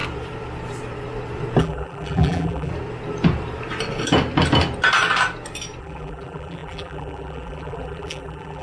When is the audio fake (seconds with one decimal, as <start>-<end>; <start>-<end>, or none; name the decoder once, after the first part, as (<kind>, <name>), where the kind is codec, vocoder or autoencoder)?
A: 1.6-2.7 (vocoder, BigVGAN v2); 5.8-8.6